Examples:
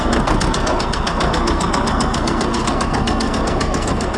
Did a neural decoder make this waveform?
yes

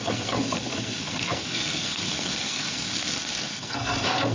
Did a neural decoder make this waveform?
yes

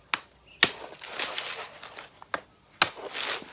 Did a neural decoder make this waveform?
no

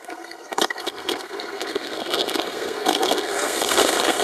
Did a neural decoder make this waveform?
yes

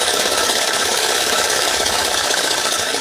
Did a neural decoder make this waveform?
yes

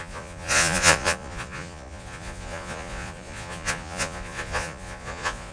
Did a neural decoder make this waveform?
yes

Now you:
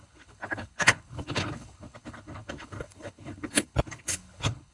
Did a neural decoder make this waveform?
yes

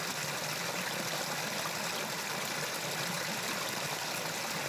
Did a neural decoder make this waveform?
no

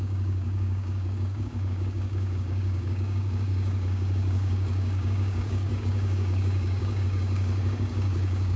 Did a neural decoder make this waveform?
yes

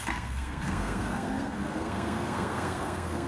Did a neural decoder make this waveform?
yes